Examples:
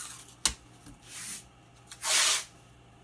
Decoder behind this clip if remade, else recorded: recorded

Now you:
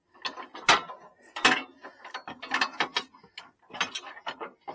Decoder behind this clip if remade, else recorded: recorded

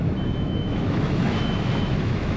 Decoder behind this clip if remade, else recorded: remade, autoencoder, DAC-VAE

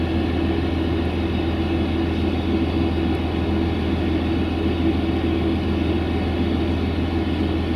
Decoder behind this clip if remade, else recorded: recorded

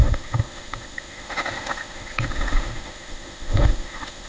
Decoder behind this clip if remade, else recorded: remade, autoencoder, DAC-VAE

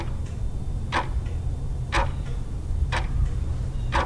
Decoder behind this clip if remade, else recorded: recorded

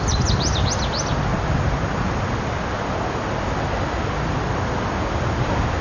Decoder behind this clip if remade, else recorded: recorded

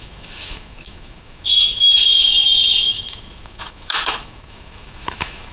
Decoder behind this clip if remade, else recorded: remade, autoencoder, DAC-VAE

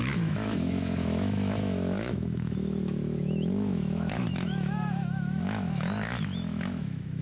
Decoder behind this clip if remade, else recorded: remade, autoencoder, DAC-VAE